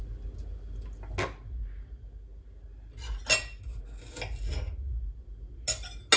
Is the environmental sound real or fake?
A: real